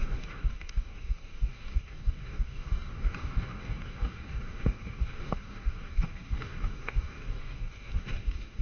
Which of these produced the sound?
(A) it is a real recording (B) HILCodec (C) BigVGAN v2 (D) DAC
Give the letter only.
D